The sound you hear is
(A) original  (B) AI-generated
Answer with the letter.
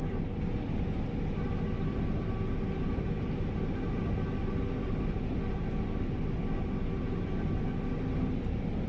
A